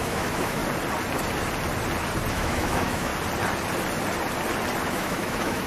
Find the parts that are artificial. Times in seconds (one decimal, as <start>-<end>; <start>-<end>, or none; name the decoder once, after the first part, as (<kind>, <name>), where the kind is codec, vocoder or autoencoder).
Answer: 0.0-0.6 (autoencoder, DAC-VAE); 2.3-3.1; 4.9-5.7